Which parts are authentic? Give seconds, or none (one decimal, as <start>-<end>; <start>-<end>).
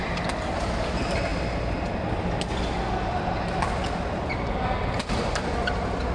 1.3-5.0